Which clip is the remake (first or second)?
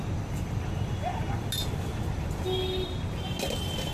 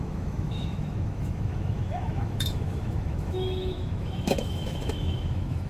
second